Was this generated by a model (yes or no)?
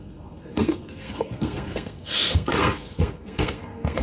yes